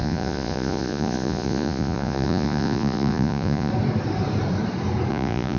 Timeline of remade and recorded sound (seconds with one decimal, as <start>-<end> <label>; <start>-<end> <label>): 0.0-3.7 remade; 3.7-5.1 recorded; 5.1-5.6 remade

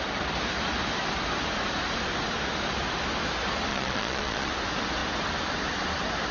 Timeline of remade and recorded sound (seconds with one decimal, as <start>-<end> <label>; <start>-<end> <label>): 0.0-3.7 recorded; 3.7-4.5 remade; 4.5-6.3 recorded